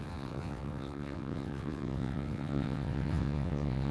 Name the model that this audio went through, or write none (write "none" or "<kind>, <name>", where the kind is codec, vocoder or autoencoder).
vocoder, WaveNeXt